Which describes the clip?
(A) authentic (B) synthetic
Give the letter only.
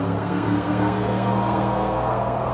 B